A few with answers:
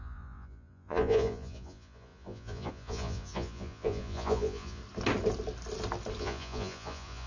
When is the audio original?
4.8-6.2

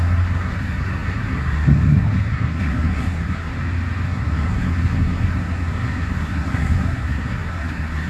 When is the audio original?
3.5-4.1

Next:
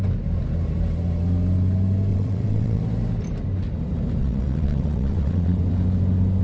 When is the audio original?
0.0-2.1; 2.8-4.2; 5.6-6.4

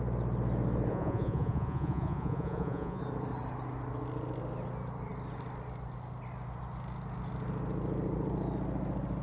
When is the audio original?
0.0-0.9; 3.0-9.2

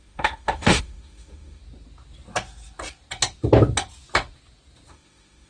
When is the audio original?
1.6-4.9